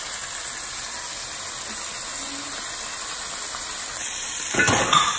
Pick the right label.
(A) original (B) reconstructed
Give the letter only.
A